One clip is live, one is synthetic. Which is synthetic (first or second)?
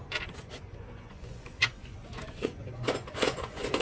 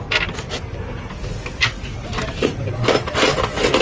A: first